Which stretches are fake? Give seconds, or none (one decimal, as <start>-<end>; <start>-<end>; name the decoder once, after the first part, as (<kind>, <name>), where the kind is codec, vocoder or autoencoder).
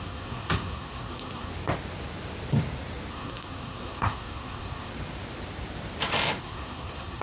0.0-1.5 (codec, SNAC); 3.1-4.9; 6.4-7.2